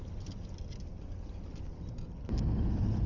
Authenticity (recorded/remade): recorded